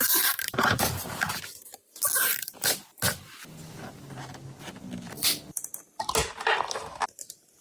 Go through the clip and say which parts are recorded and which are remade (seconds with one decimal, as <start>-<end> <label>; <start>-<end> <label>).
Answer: 0.0-1.7 remade; 1.7-2.3 recorded; 2.3-2.8 remade; 2.8-6.7 recorded; 6.7-7.6 remade